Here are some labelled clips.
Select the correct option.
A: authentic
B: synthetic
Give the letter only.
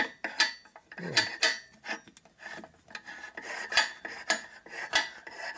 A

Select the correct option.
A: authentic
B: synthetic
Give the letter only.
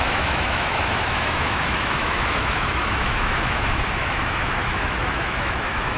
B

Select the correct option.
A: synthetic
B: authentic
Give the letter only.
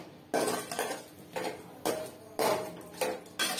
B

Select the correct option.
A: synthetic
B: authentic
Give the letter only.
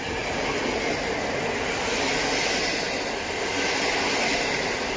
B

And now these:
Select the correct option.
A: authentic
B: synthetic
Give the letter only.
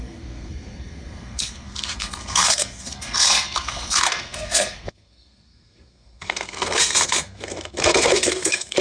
B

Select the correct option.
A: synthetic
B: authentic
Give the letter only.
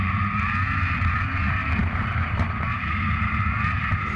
A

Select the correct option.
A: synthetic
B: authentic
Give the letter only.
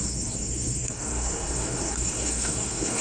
A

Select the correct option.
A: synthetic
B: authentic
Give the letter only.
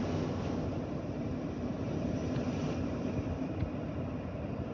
B